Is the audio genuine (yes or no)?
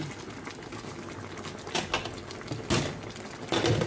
yes